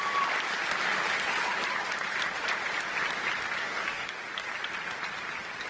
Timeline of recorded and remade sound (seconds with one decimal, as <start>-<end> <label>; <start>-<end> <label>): 0.0-3.6 recorded; 3.6-4.1 remade; 4.1-5.7 recorded